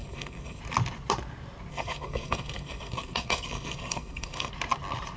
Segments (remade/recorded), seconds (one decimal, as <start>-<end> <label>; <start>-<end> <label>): 0.0-0.6 remade; 0.6-1.7 recorded; 1.7-4.5 remade; 4.5-5.2 recorded